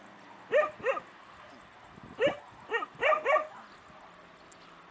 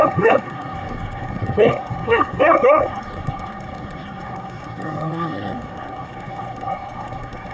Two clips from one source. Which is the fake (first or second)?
second